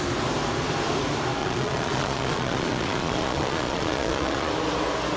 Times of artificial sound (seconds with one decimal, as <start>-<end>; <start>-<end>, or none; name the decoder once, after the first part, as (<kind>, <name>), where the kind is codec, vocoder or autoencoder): 1.4-4.5 (vocoder, Vocos)